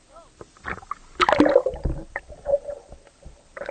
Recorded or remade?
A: recorded